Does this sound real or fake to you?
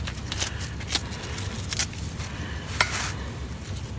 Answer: real